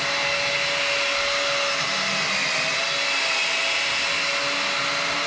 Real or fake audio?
real